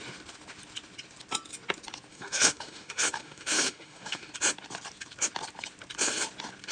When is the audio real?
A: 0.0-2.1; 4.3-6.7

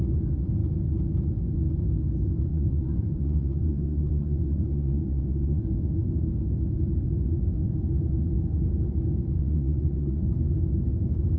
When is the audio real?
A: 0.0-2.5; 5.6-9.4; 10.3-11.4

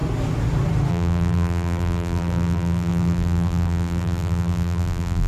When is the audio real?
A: 0.0-0.9

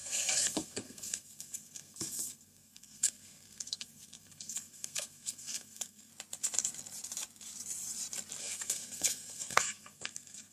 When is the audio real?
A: 6.1-8.4